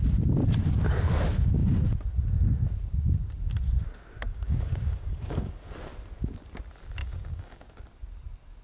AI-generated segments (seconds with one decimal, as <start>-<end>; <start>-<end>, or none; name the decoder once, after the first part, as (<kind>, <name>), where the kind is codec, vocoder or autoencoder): 4.3-5.7 (codec, DAC); 7.0-7.7